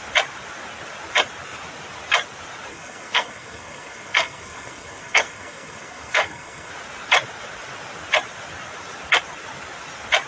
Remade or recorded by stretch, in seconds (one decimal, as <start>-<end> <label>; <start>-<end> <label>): 0.0-2.7 recorded; 2.7-6.7 remade; 6.7-10.3 recorded